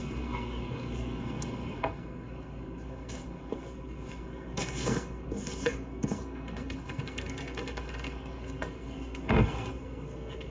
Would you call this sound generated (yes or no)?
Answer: yes